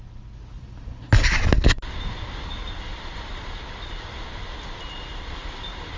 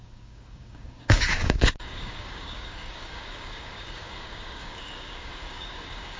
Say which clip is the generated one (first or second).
second